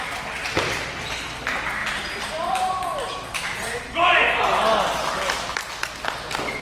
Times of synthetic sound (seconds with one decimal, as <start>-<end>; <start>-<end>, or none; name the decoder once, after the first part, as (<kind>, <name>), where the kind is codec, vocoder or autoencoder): 0.4-1.0 (vocoder, BigVGAN v2); 1.8-4.4